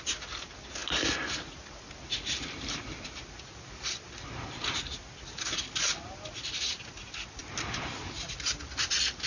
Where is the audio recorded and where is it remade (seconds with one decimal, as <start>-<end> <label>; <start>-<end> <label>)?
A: 0.0-9.3 recorded